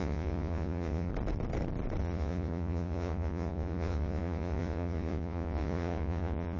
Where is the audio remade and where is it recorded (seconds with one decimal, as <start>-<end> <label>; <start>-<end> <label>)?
0.0-1.1 remade; 1.1-2.0 recorded; 2.0-6.6 remade